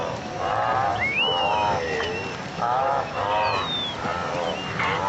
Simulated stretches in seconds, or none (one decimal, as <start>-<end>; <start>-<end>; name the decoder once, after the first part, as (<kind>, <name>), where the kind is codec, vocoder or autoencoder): 0.9-1.8 (autoencoder, DAC-VAE); 2.5-3.2